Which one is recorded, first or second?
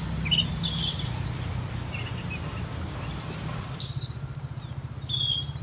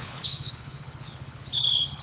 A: first